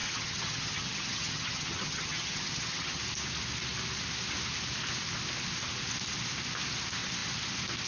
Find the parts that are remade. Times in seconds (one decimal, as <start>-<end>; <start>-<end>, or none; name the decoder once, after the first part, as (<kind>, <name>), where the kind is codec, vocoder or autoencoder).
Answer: 0.0-3.0 (vocoder, HiFi-GAN)